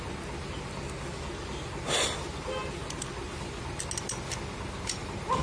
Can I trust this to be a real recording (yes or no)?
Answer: yes